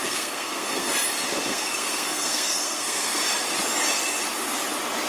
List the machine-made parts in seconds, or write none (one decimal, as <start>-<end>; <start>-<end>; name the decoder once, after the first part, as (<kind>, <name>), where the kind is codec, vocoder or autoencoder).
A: 0.0-0.9 (codec, SNAC); 1.5-3.2